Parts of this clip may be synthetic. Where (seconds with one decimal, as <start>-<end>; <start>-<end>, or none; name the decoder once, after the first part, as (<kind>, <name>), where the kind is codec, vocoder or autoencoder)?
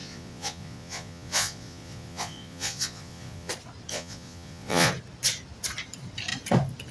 0.0-3.5 (vocoder, Vocos); 3.9-4.9